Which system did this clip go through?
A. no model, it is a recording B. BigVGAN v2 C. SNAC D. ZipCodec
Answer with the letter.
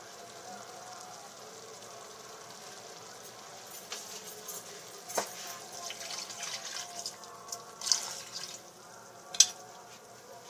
A